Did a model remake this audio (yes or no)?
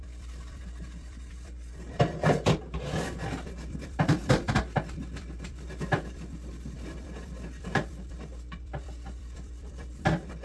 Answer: yes